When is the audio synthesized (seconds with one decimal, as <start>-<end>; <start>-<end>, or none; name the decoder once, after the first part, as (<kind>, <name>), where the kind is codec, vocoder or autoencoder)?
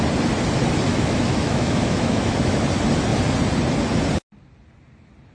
0.9-2.6 (autoencoder, DAC-VAE)